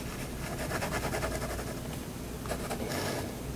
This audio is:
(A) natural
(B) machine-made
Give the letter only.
A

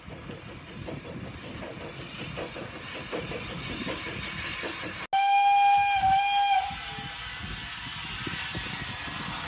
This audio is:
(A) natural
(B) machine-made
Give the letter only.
A